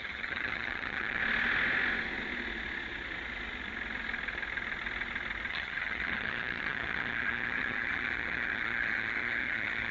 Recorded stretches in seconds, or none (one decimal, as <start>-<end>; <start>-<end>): 1.2-5.5